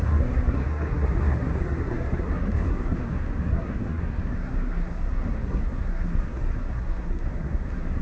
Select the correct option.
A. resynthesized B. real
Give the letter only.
A